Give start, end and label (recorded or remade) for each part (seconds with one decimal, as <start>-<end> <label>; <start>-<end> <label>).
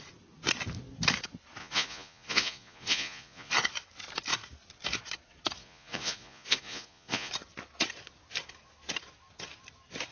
0.0-1.6 recorded; 1.6-3.5 remade; 3.5-5.6 recorded; 5.6-7.3 remade; 7.3-10.1 recorded